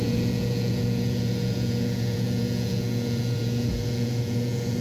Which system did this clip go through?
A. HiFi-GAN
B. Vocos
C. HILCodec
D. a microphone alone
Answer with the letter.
B